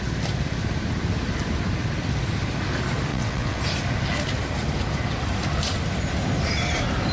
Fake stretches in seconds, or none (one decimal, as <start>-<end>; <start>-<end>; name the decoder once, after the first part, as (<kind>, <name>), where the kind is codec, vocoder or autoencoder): 3.1-3.6 (vocoder, WaveNeXt)